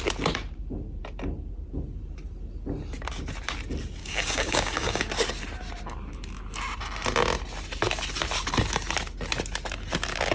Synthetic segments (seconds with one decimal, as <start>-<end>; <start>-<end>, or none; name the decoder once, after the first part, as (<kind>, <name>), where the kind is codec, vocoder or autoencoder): 4.0-5.0 (codec, DAC)

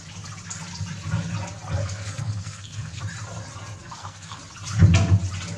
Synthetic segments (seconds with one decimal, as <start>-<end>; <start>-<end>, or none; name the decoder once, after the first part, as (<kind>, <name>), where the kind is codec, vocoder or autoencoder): 1.8-3.0 (codec, SNAC); 3.8-4.4

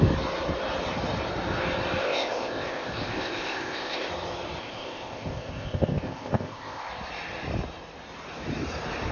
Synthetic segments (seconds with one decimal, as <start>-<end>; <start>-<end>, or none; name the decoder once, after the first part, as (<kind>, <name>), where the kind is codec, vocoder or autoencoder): 2.0-4.1 (codec, ZipCodec); 4.6-6.9

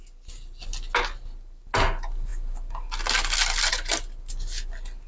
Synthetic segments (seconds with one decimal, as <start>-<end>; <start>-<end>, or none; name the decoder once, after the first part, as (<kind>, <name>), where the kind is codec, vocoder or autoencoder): none